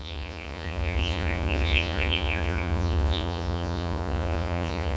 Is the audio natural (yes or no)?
no